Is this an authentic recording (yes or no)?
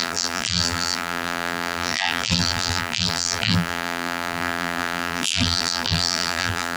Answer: no